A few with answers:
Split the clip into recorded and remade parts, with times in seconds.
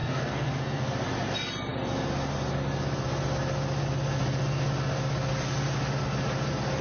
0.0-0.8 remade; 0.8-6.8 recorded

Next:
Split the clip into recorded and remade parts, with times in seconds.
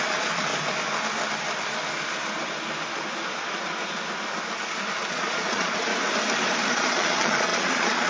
0.0-0.5 remade; 0.5-5.1 recorded; 5.1-5.9 remade; 5.9-6.7 recorded; 6.7-8.1 remade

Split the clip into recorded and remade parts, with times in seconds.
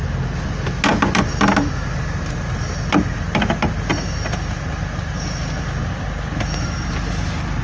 0.0-7.6 recorded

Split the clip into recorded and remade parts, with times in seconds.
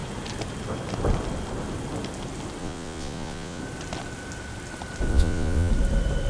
0.0-2.6 recorded; 2.6-3.6 remade; 3.6-5.1 recorded; 5.1-5.7 remade; 5.7-6.3 recorded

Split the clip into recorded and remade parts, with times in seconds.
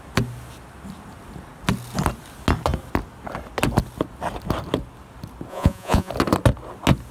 0.0-5.5 recorded; 5.5-6.1 remade; 6.1-7.1 recorded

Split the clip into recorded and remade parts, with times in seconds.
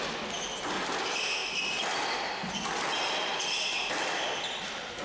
0.0-5.0 recorded